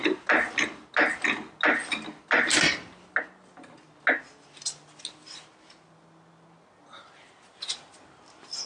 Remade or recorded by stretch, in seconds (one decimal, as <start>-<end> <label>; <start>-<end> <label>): 0.0-8.7 recorded